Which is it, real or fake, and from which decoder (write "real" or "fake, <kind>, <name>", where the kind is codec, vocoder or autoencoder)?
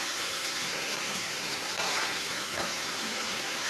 fake, codec, SNAC